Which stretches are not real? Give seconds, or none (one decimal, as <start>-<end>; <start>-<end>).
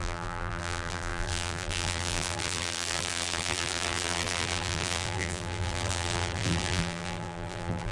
0.0-7.9